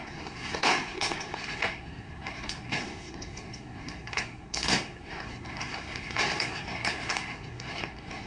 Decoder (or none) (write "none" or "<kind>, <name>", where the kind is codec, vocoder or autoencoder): codec, SNAC